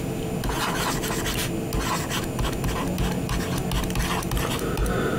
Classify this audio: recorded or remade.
recorded